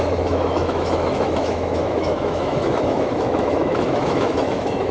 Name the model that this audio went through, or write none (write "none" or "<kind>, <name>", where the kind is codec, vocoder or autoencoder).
autoencoder, DAC-VAE